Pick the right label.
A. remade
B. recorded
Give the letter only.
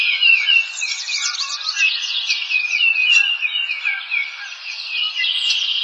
A